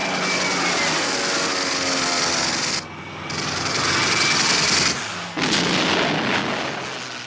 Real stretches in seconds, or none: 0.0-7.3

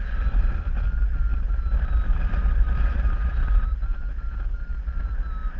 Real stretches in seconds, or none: 0.0-5.6

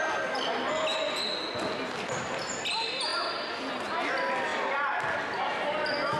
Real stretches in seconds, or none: 0.0-6.2

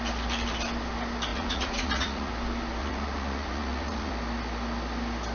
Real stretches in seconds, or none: 0.0-1.3; 2.3-2.8; 4.1-5.3

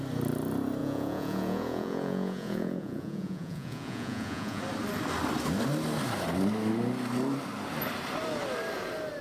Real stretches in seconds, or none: 0.0-0.8; 4.6-9.2

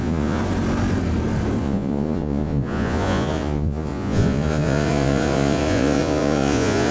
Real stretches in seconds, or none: 0.4-1.6

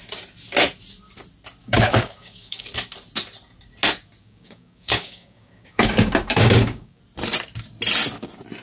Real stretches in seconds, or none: 0.0-1.6; 2.6-4.2; 7.0-8.6

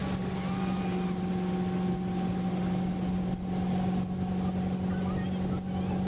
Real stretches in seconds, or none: 0.0-6.1